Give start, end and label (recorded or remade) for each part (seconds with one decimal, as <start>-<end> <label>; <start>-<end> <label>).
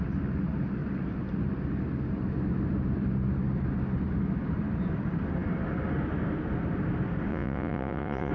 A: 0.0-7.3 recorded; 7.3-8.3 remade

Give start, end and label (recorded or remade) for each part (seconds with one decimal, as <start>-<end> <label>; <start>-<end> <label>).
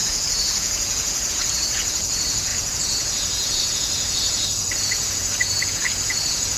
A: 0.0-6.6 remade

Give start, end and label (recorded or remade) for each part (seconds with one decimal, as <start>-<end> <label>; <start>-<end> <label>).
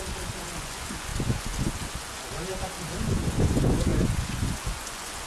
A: 0.0-5.3 remade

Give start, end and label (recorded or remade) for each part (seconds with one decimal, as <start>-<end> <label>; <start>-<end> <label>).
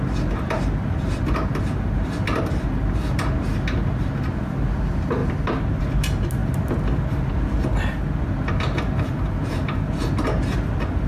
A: 0.0-11.1 recorded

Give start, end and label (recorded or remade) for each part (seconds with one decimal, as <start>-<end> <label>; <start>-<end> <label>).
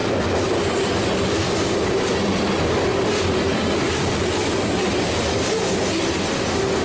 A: 0.0-6.8 recorded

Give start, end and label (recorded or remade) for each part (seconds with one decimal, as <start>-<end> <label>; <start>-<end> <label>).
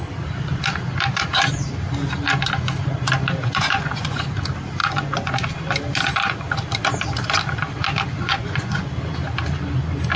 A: 0.0-3.4 recorded; 3.4-4.2 remade; 4.2-4.8 recorded; 4.8-5.3 remade; 5.3-8.2 recorded; 8.2-8.9 remade; 8.9-10.2 recorded